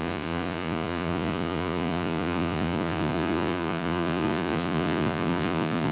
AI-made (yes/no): yes